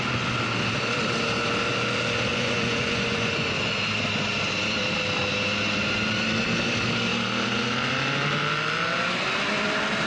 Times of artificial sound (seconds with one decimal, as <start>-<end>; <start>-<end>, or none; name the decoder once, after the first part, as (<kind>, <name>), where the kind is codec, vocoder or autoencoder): 2.3-3.7 (vocoder, Vocos)